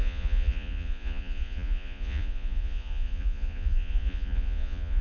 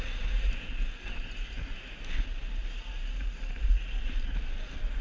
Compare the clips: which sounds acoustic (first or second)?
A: second